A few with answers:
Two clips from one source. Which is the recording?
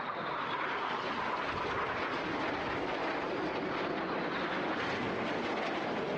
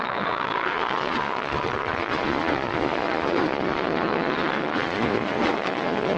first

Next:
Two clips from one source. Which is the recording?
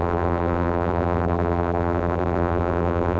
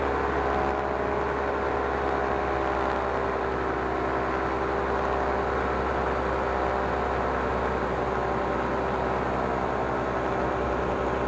second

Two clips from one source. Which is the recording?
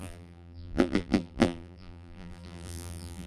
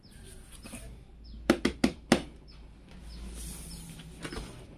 second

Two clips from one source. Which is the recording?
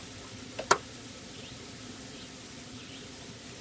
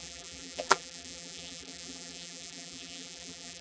first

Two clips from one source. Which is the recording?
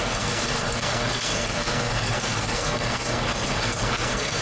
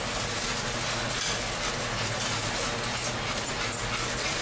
second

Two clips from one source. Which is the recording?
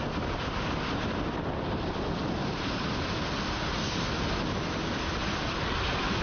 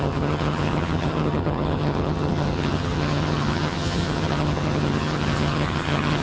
first